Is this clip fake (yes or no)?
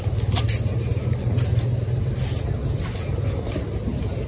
no